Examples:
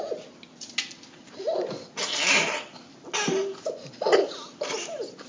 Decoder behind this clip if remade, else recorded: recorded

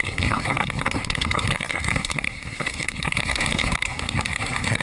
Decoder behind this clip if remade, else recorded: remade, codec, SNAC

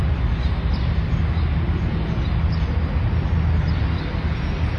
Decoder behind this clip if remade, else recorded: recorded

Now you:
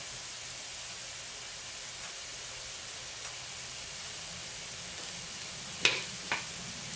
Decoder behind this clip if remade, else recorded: recorded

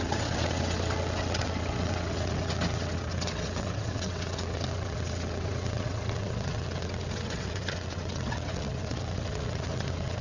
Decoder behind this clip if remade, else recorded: remade, vocoder, WaveNeXt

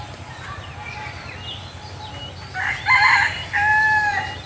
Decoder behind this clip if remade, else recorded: recorded